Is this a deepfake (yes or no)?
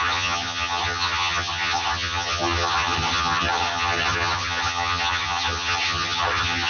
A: yes